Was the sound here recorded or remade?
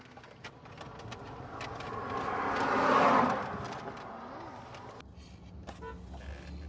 recorded